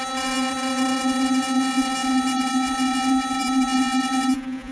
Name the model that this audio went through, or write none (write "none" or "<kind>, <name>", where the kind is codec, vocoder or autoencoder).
vocoder, Vocos